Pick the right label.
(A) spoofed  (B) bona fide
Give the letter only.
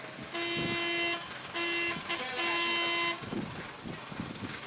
B